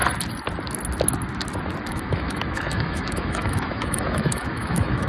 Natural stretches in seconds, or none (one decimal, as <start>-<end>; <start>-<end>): 0.0-1.9